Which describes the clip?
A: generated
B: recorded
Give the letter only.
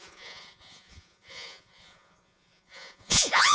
A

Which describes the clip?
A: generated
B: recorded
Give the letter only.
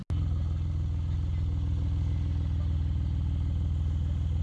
B